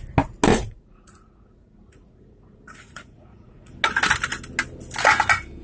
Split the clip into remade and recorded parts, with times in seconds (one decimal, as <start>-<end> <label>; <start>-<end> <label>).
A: 0.0-0.5 recorded; 0.5-3.7 remade; 3.7-5.6 recorded